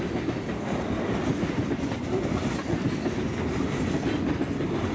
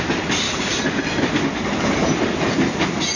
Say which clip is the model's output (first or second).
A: first